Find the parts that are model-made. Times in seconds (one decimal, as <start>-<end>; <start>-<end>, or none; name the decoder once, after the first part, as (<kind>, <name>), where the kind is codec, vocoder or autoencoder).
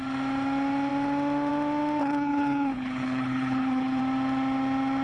2.0-4.0 (codec, HILCodec)